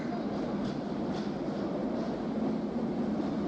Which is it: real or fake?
real